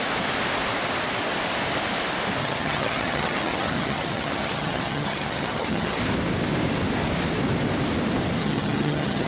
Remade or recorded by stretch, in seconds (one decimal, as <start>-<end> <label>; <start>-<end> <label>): 0.0-2.4 recorded; 2.4-6.0 remade; 6.0-8.4 recorded; 8.4-9.3 remade